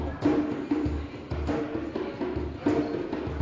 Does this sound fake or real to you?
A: real